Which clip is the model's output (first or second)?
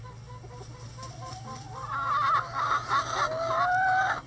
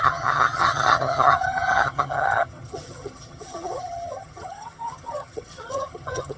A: second